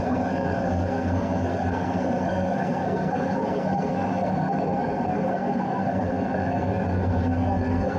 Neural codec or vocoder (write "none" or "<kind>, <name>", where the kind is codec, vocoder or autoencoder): codec, SNAC